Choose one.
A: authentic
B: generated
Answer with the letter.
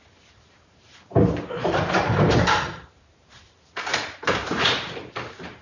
B